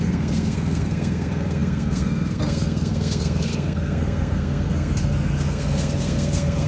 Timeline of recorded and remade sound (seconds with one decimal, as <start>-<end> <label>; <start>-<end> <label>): 0.0-6.7 remade